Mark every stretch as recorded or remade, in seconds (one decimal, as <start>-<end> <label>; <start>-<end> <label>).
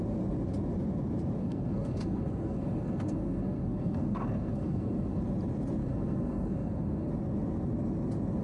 0.0-1.4 recorded; 1.4-5.2 remade; 5.2-5.8 recorded; 5.8-7.1 remade; 7.1-8.4 recorded